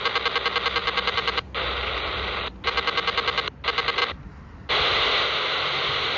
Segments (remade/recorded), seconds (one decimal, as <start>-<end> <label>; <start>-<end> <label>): 0.0-0.8 recorded; 0.8-1.5 remade; 1.5-6.2 recorded